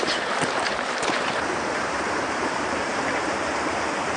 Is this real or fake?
fake